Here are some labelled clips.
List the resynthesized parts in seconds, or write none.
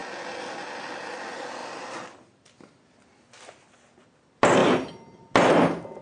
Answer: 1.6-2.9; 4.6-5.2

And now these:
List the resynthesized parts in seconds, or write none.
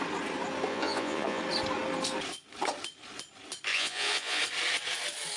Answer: 0.7-1.4; 3.7-4.4